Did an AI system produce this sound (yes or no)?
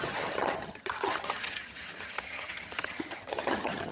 yes